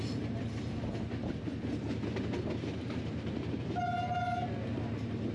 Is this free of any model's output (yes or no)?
yes